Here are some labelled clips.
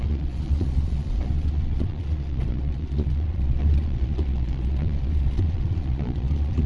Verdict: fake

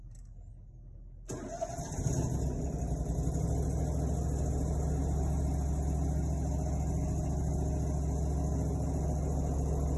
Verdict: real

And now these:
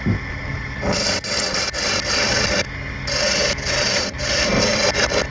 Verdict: real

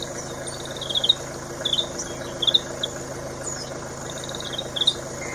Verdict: real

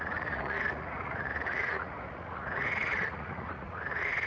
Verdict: fake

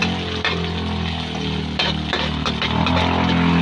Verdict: real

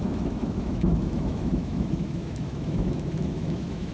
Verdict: fake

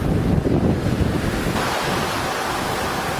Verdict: real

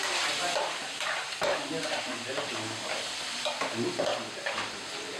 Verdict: real